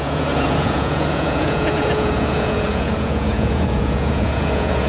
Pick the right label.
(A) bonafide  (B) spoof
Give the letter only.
B